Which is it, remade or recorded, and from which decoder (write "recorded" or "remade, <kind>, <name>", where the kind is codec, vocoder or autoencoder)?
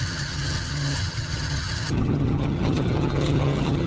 remade, vocoder, HiFi-GAN